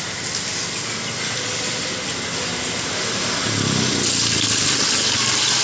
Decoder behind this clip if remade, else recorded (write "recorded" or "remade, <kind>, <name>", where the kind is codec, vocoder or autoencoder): recorded